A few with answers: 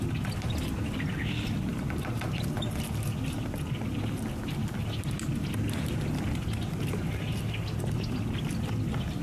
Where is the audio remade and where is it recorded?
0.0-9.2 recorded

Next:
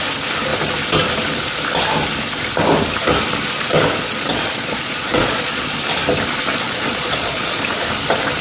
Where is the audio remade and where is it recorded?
0.0-4.3 recorded; 4.3-5.8 remade; 5.8-6.5 recorded; 6.5-7.6 remade; 7.6-8.4 recorded

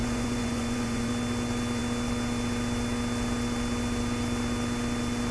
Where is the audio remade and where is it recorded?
0.0-1.1 remade; 1.1-5.3 recorded

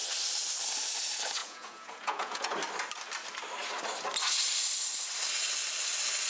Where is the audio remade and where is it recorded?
0.0-1.4 recorded; 1.4-2.5 remade; 2.5-6.3 recorded

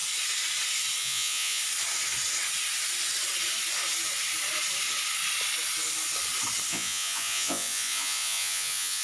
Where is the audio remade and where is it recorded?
0.0-1.0 recorded; 1.0-1.6 remade; 1.6-6.7 recorded; 6.7-9.0 remade

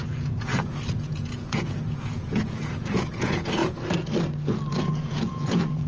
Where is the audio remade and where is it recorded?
0.0-3.6 remade; 3.6-4.7 recorded; 4.7-5.9 remade

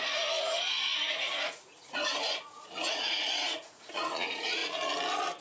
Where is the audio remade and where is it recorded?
0.0-4.6 remade; 4.6-5.4 recorded